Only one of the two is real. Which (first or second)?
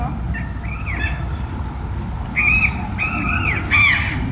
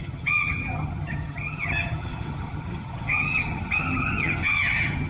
first